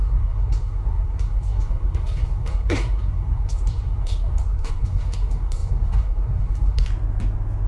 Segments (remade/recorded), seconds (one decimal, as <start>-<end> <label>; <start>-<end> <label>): 0.0-6.9 remade; 6.9-7.7 recorded